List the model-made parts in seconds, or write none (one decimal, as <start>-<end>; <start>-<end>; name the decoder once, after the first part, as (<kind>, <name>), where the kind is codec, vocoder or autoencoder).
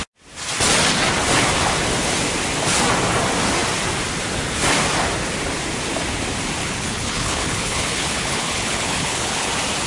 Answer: 6.6-9.5 (codec, HILCodec)